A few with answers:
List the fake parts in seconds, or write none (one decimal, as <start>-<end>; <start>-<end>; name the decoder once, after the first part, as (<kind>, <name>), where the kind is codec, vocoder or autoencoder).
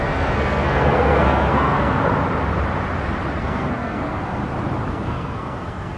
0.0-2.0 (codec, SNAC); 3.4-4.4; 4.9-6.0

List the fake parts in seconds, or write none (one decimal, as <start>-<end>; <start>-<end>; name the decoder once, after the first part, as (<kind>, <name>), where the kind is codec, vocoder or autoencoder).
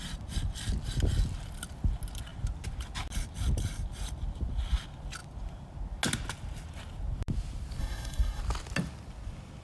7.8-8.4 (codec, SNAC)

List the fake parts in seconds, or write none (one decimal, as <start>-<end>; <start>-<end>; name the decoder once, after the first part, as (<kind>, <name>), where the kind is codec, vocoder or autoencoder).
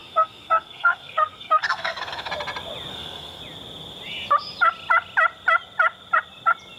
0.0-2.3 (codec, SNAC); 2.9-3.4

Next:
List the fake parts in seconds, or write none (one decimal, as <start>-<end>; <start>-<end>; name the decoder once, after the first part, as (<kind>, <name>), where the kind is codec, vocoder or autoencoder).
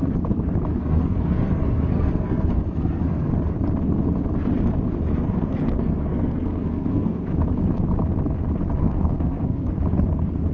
0.7-3.3 (codec, SNAC); 5.1-7.2; 8.8-9.7